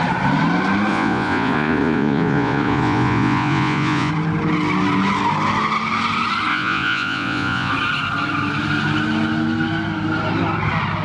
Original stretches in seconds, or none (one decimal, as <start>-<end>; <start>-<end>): 0.0-0.9; 4.1-6.5; 7.7-11.0